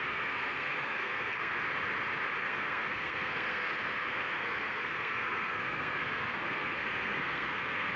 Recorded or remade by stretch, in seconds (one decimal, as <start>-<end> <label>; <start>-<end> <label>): 0.0-1.5 remade; 1.5-2.4 recorded; 2.4-8.0 remade